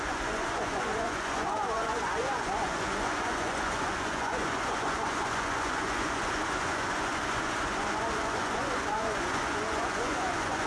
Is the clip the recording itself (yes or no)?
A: no